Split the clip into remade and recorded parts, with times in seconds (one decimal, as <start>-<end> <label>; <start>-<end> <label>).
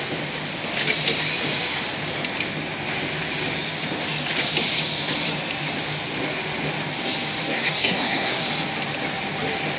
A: 0.0-7.5 recorded; 7.5-8.4 remade; 8.4-9.8 recorded